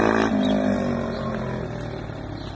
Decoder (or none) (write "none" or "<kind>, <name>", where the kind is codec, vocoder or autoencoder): none